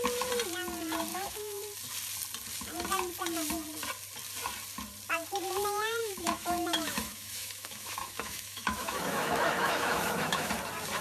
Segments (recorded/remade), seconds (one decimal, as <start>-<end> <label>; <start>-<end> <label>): 0.0-1.1 recorded; 1.1-1.6 remade; 1.6-6.0 recorded; 6.0-10.5 remade; 10.5-11.0 recorded